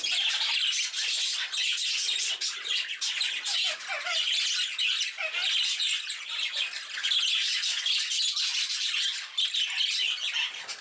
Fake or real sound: real